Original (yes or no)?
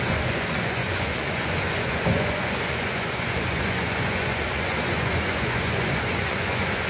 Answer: no